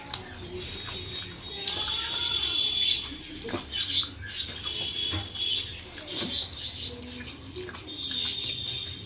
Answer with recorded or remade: recorded